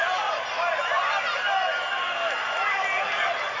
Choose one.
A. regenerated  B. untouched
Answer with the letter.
B